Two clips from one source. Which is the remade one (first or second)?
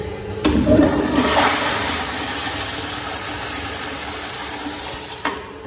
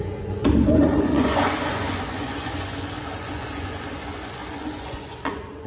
second